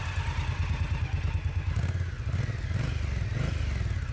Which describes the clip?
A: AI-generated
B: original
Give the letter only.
B